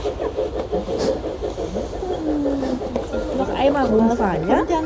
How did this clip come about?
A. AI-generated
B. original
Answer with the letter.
B